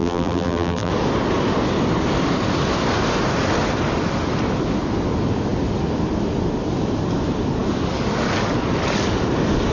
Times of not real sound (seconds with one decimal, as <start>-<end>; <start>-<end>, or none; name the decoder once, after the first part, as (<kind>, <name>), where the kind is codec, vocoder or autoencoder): 0.0-0.9 (vocoder, BigVGAN v2)